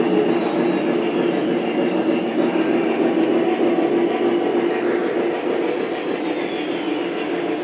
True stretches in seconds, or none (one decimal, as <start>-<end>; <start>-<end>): 0.0-7.6